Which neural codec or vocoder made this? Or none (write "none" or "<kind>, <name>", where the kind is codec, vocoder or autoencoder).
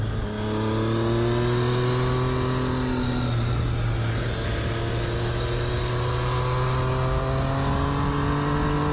none